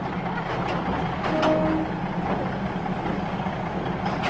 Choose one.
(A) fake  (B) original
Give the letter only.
B